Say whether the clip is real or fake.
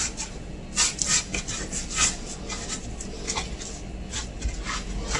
real